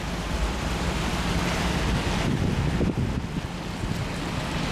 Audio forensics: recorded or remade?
recorded